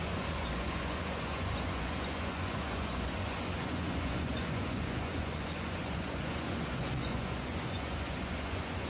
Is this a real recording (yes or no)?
no